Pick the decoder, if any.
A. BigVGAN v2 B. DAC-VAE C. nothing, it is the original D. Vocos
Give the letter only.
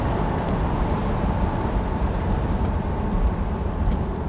C